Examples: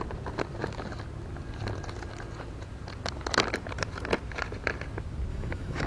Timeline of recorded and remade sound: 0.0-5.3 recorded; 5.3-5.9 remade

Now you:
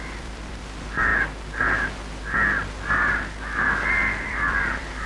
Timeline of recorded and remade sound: 0.0-1.1 remade; 1.1-4.2 recorded; 4.2-5.1 remade

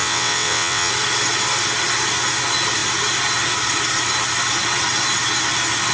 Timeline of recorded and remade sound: 0.0-0.9 remade; 0.9-5.9 recorded

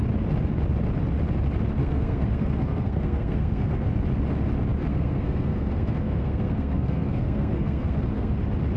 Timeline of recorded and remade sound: 0.0-1.8 recorded; 1.8-3.9 remade; 3.9-4.9 recorded; 4.9-8.3 remade; 8.3-8.8 recorded